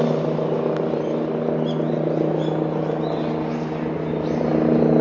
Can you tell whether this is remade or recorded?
recorded